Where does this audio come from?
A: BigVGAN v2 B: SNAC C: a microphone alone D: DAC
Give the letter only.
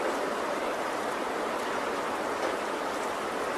C